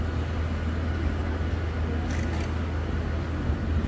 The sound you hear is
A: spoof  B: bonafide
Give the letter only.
B